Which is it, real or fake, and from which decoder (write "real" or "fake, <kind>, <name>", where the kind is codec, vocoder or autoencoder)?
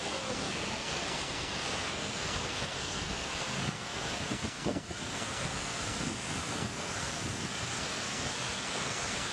fake, codec, SNAC